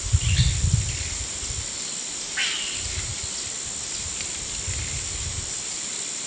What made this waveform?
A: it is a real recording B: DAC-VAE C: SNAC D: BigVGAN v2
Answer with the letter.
A